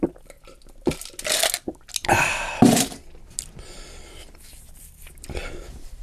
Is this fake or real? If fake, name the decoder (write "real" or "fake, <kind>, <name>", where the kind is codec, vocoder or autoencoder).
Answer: real